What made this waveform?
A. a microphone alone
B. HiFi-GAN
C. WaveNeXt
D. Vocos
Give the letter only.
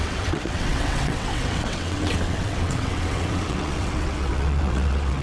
C